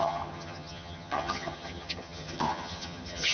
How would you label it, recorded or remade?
remade